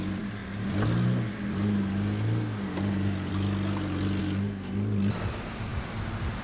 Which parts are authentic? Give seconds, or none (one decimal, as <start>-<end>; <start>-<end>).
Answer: 0.0-4.2; 4.7-6.4